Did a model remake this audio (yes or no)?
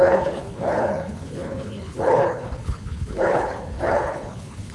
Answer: yes